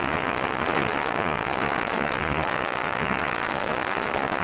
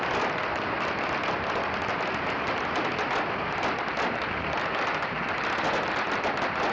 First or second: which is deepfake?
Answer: first